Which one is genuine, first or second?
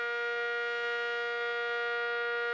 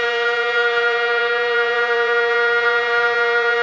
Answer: first